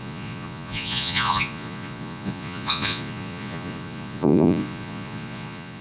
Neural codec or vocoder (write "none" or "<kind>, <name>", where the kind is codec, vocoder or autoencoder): vocoder, Vocos